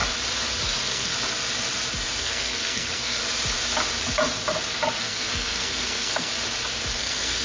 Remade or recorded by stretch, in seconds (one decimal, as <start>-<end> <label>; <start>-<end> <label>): 0.0-0.6 recorded; 0.6-1.1 remade; 1.1-2.2 recorded; 2.2-3.2 remade; 3.2-5.0 recorded; 5.0-6.3 remade; 6.3-7.0 recorded; 7.0-7.4 remade